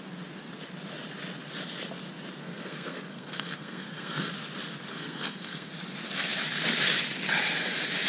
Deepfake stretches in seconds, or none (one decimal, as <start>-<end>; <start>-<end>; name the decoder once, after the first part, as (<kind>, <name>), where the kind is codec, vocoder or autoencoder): 2.4-4.3 (codec, SNAC); 4.9-5.7